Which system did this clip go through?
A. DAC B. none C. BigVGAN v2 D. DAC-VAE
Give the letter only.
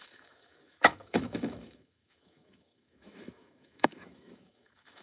D